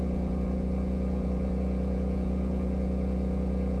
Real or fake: fake